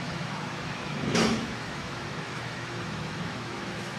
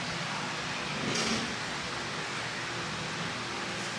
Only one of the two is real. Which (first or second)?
second